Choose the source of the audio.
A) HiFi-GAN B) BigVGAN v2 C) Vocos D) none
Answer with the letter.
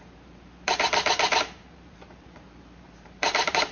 B